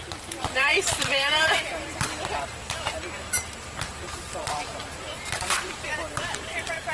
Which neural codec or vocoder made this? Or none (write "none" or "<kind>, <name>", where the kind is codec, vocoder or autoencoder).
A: vocoder, BigVGAN v2